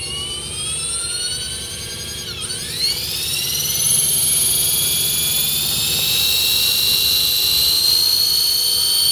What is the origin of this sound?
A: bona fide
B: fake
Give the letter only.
A